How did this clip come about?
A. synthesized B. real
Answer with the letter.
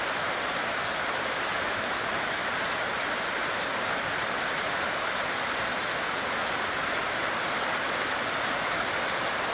B